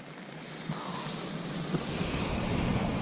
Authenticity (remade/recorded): recorded